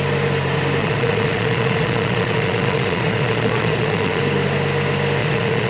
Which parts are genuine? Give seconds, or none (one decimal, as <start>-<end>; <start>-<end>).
0.0-0.8; 4.2-5.2